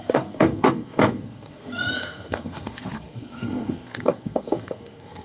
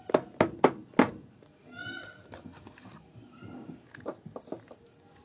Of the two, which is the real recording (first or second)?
second